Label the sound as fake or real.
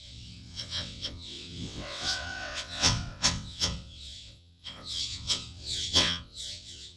fake